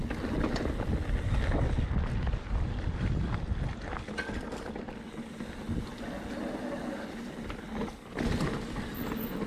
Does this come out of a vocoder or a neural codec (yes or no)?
no